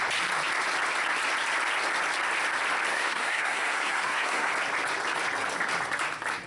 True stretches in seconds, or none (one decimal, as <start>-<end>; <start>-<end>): 0.0-2.9; 4.5-6.5